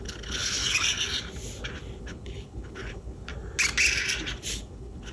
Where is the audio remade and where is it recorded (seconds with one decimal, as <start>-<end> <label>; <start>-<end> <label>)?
0.0-0.6 remade; 0.6-2.0 recorded; 2.0-3.3 remade; 3.3-4.5 recorded; 4.5-5.1 remade